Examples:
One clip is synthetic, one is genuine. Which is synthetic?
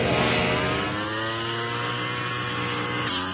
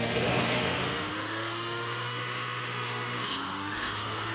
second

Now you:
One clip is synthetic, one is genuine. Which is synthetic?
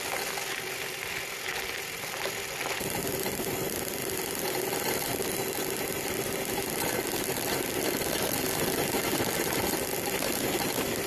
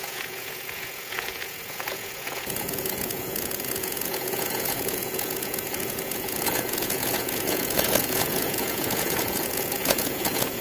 second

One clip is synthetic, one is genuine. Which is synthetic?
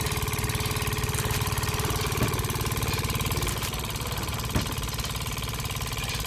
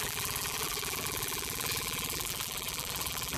second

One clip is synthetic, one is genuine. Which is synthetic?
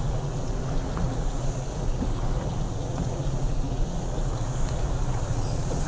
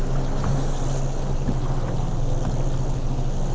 first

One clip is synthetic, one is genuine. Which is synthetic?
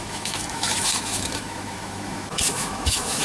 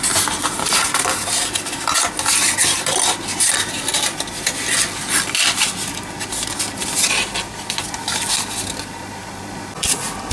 first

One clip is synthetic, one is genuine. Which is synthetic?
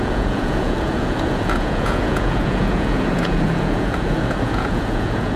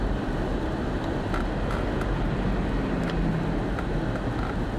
first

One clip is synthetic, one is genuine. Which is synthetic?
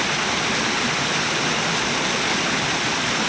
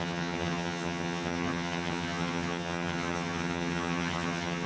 second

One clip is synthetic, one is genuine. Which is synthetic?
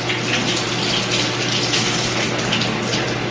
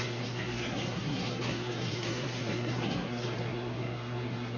second